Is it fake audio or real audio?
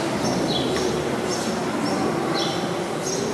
real